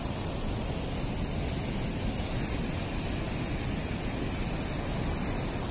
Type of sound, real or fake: real